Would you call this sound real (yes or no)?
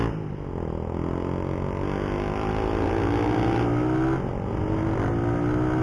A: yes